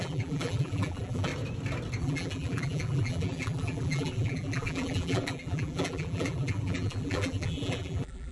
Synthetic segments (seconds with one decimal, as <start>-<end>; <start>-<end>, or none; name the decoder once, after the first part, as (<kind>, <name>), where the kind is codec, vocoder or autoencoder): 0.0-1.3 (vocoder, BigVGAN v2); 2.0-8.3